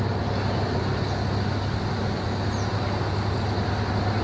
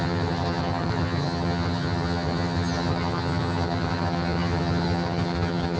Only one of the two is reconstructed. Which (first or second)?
second